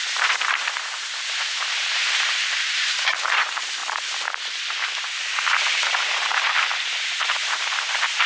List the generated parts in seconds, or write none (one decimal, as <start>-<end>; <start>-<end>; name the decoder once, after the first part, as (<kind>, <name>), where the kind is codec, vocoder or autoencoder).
0.0-3.8 (vocoder, BigVGAN v2); 5.0-8.3